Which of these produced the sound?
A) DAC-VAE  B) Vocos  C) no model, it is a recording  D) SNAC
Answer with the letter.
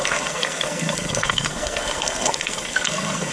D